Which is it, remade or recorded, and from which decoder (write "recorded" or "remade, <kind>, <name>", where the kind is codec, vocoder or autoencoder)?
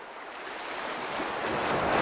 recorded